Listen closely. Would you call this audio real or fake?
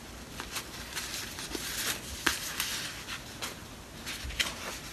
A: real